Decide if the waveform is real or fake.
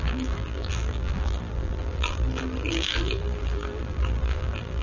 fake